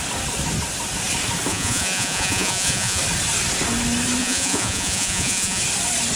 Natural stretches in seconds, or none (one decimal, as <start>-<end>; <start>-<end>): 0.0-1.5; 3.0-4.2; 5.6-6.2